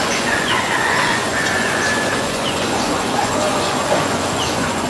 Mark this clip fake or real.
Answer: fake